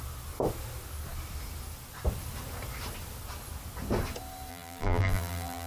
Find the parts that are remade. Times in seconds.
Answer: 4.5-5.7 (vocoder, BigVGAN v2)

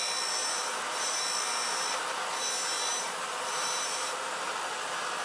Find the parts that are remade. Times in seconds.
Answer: 0.4-1.2 (vocoder, BigVGAN v2); 2.9-4.5